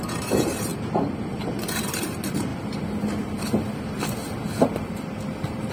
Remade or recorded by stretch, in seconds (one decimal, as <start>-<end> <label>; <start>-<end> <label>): 0.0-0.7 remade; 0.7-1.3 recorded; 1.3-2.5 remade; 2.5-5.7 recorded